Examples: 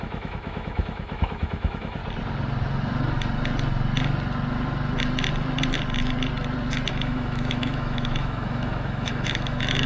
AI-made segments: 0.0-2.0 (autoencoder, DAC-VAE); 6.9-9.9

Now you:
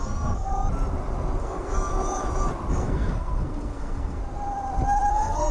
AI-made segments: 0.0-0.5 (codec, SNAC); 1.4-1.9; 2.7-4.2; 5.1-5.5

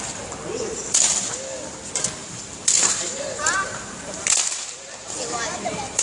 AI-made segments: 2.2-6.0 (vocoder, BigVGAN v2)

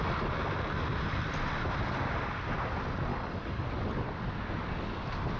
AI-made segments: 3.1-3.7 (codec, DAC)

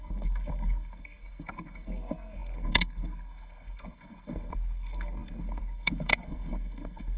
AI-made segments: 0.0-7.2 (codec, SNAC)

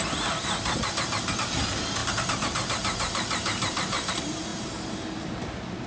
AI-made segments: 2.0-4.1 (vocoder, BigVGAN v2)